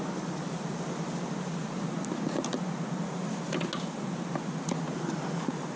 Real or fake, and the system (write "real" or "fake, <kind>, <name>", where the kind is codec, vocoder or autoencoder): real